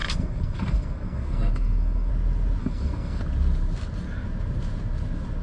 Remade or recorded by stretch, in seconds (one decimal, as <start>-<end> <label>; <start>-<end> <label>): 0.0-2.1 remade; 2.1-2.6 recorded; 2.6-3.2 remade; 3.2-5.4 recorded